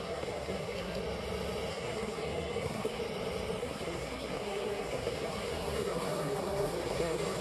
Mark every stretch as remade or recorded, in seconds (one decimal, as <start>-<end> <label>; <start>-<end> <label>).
0.0-1.0 remade; 1.0-1.7 recorded; 1.7-3.0 remade; 3.0-3.6 recorded; 3.6-7.4 remade